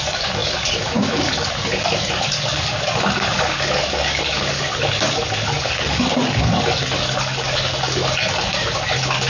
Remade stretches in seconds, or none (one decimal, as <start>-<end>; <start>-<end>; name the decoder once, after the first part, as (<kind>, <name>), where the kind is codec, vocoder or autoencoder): 0.0-9.3 (codec, DAC)